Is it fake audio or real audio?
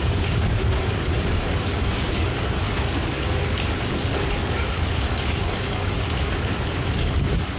fake